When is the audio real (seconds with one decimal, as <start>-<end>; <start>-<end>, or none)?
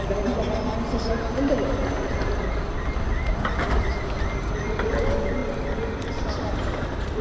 0.0-7.2